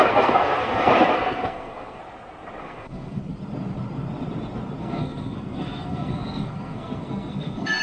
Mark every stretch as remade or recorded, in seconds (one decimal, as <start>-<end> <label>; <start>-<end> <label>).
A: 0.0-2.0 remade; 2.0-2.6 recorded; 2.6-3.2 remade; 3.2-4.8 recorded; 4.8-7.8 remade